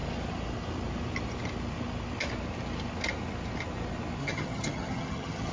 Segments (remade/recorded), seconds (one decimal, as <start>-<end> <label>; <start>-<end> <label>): 0.0-4.2 recorded; 4.2-5.5 remade